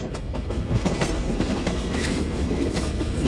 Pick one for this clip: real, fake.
fake